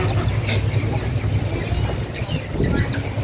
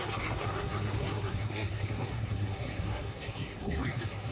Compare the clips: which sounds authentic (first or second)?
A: first